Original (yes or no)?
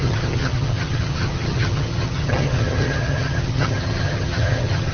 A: no